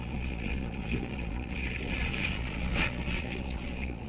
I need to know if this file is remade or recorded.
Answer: remade